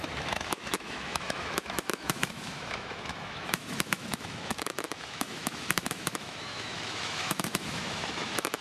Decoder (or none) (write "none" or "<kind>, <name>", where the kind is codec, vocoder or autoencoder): autoencoder, DAC-VAE